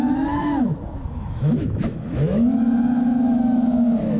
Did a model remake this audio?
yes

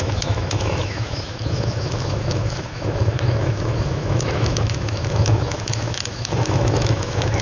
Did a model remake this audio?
yes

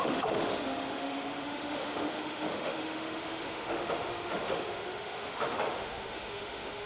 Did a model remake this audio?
yes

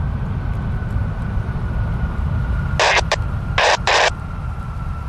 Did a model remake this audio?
no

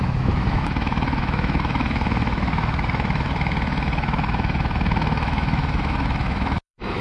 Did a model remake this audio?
yes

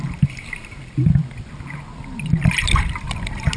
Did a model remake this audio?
no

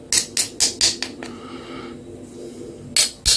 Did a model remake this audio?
no